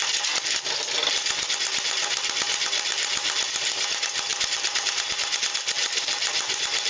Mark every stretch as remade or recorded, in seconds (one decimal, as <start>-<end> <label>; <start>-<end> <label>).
0.0-1.0 remade; 1.0-2.6 recorded; 2.6-6.9 remade